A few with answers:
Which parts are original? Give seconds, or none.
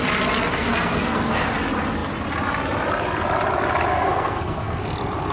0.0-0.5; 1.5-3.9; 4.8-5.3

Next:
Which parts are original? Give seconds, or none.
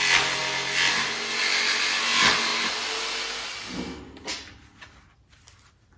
0.0-6.0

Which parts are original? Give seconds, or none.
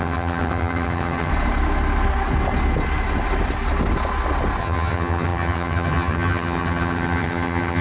1.3-4.6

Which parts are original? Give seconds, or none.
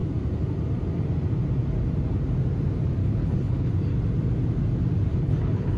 0.0-3.0; 3.7-5.1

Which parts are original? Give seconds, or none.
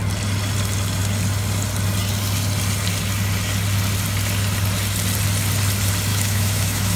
0.0-6.1